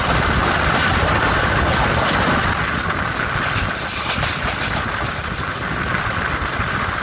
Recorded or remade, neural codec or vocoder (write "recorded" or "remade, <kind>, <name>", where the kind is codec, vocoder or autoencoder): recorded